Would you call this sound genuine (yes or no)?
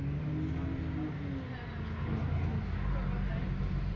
yes